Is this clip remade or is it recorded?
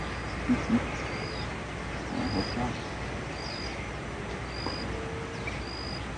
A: recorded